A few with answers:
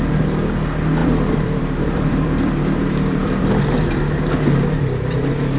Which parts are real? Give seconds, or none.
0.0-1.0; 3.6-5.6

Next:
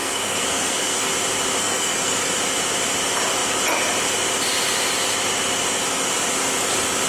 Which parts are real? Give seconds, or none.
1.1-1.6; 2.3-7.1

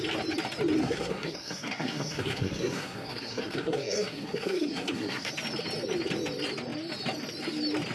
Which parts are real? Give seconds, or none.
0.0-0.8; 5.3-7.9

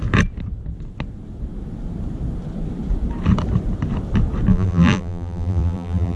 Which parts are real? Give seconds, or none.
0.0-4.5

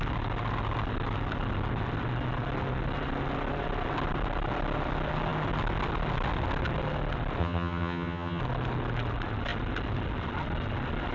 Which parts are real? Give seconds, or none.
0.0-7.4; 8.4-11.1